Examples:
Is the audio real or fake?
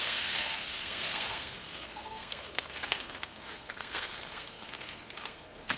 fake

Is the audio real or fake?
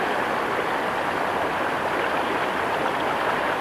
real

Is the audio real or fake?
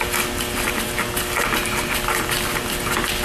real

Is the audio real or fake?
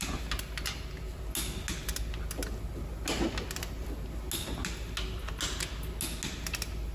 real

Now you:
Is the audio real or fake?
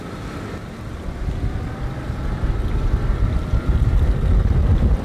real